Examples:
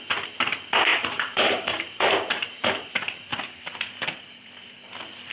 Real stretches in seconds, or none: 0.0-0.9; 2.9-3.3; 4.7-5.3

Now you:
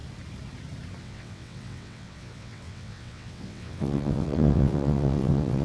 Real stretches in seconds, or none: 0.0-1.0

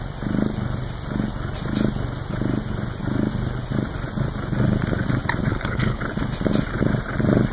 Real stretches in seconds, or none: 0.0-5.5; 6.0-7.5

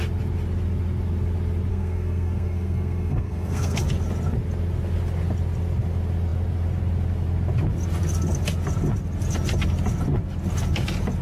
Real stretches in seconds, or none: 0.0-1.7; 3.8-11.2

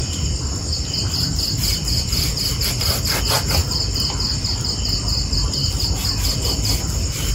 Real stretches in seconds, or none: 0.0-7.3